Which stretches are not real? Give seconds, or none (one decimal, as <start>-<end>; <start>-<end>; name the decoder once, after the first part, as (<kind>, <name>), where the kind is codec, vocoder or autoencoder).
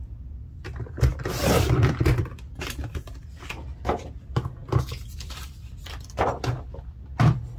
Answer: none